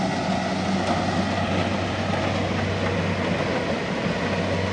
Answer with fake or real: real